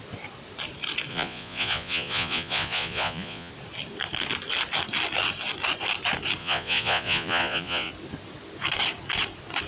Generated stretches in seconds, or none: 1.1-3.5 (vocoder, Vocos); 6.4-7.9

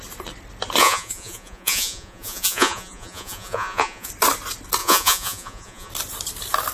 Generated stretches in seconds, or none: 0.8-4.1 (vocoder, Vocos); 4.8-5.9

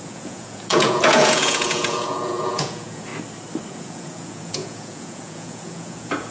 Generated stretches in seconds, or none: 0.0-3.1 (vocoder, Vocos); 3.7-6.3

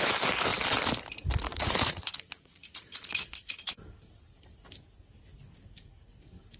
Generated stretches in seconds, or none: 1.5-3.7 (vocoder, Vocos)